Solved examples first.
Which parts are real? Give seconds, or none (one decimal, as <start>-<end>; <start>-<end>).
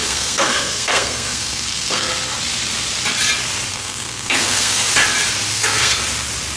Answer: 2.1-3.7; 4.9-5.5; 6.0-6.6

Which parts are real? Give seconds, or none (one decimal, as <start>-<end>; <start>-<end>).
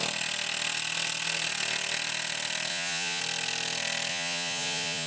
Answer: 0.0-2.7; 3.2-4.1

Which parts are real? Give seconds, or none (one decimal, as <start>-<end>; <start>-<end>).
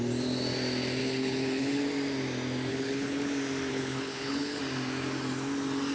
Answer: 0.0-1.0; 1.8-2.7; 3.3-3.7; 4.6-5.9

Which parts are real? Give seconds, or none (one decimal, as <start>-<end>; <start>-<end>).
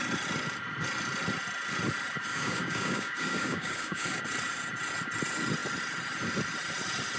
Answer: 0.0-2.3; 4.2-7.2